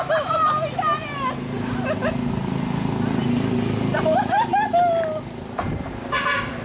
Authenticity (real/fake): real